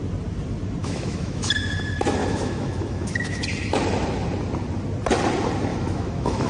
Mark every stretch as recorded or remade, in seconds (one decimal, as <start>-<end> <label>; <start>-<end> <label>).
0.0-0.8 recorded; 0.8-1.5 remade; 1.5-2.2 recorded; 2.2-3.4 remade; 3.4-5.7 recorded; 5.7-6.5 remade